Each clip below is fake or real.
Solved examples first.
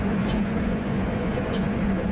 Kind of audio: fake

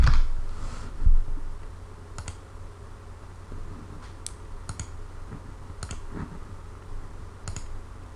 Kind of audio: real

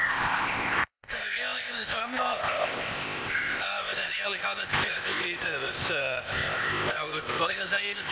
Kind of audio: fake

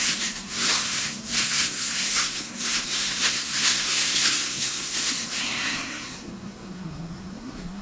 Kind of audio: fake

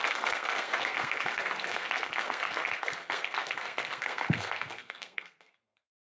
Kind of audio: fake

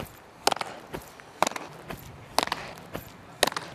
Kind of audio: real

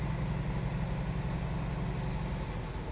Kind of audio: real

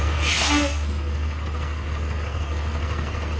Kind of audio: fake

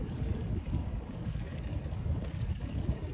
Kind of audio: fake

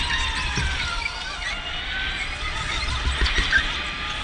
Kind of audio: real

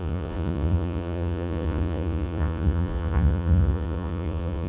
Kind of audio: fake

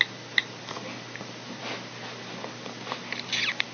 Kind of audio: real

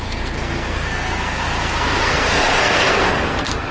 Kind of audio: fake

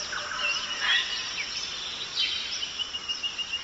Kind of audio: real